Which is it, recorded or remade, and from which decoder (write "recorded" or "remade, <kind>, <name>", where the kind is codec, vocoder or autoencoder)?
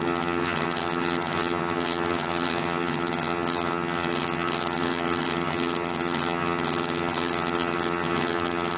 remade, vocoder, HiFi-GAN